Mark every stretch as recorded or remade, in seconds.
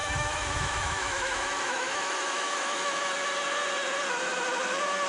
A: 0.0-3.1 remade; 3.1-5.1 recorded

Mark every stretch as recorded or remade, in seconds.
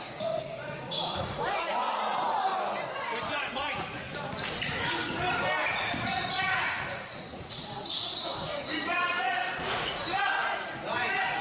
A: 0.0-2.5 remade; 2.5-3.3 recorded; 3.3-4.1 remade; 4.1-5.7 recorded; 5.7-11.4 remade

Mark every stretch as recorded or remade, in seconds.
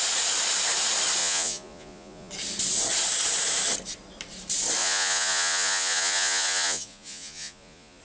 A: 0.0-1.2 recorded; 1.2-2.3 remade; 2.3-4.8 recorded; 4.8-8.0 remade